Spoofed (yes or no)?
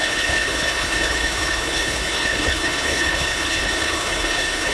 yes